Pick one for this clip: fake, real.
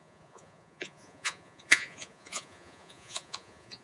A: fake